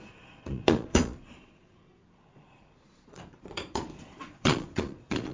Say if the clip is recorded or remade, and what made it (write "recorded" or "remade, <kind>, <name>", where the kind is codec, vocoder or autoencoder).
remade, vocoder, Vocos